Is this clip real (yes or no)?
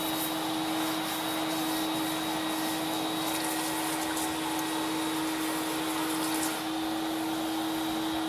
yes